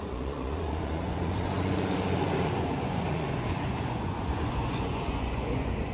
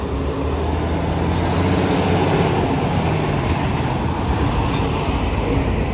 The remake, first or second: first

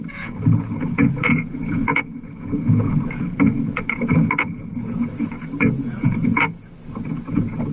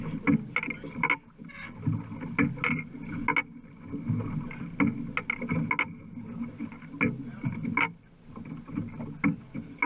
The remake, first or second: first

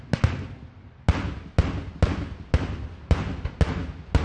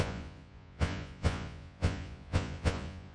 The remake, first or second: second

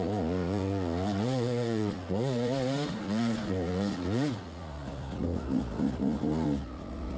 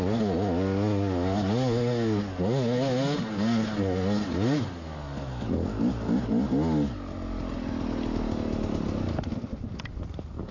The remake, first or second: first